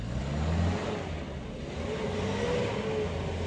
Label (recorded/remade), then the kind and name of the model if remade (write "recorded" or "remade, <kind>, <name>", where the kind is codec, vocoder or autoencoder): recorded